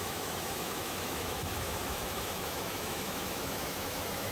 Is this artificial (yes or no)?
yes